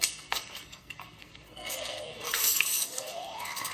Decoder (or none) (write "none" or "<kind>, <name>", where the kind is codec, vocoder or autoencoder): codec, SNAC